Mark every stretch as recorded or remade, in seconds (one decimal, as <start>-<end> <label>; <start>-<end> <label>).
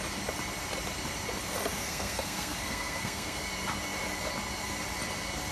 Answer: 0.0-1.7 recorded; 1.7-3.5 remade; 3.5-5.5 recorded